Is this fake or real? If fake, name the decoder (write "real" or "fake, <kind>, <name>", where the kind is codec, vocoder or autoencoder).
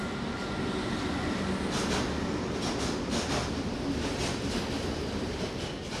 real